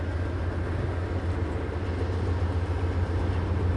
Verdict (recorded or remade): recorded